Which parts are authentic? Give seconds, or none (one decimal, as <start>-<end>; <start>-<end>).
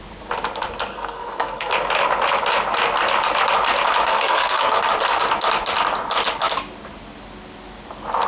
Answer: 0.0-0.9; 1.7-4.1; 4.8-8.3